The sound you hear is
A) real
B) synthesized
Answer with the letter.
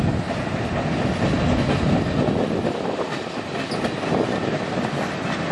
A